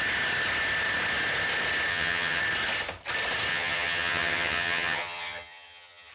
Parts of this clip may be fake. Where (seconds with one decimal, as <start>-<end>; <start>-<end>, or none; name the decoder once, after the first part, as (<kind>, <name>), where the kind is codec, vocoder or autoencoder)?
1.9-2.4 (vocoder, HiFi-GAN); 3.5-6.1